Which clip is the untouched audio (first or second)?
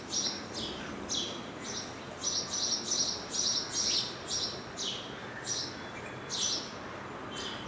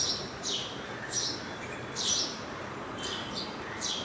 first